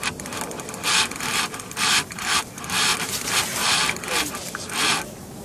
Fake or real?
real